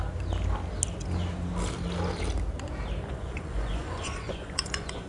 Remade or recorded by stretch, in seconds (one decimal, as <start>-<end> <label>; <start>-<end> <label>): 0.0-3.1 recorded; 3.1-5.1 remade